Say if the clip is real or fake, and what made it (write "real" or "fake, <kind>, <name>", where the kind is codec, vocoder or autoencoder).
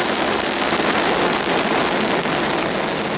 real